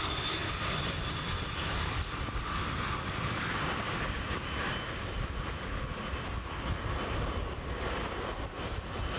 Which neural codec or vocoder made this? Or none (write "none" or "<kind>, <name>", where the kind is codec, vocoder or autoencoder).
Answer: none